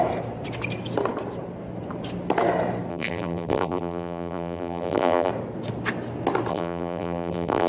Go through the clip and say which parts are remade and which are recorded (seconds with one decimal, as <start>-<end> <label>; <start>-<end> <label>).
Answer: 0.0-2.9 recorded; 2.9-5.3 remade; 5.3-6.5 recorded; 6.5-7.7 remade